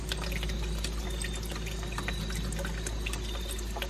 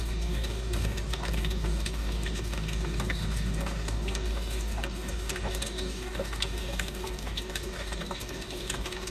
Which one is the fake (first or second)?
second